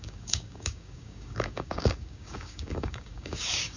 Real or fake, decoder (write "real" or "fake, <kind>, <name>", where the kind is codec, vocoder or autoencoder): fake, codec, DAC